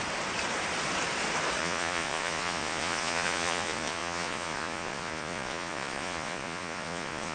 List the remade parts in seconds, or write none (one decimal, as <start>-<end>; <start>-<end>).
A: 1.6-7.3